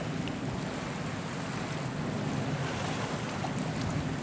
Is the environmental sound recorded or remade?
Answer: recorded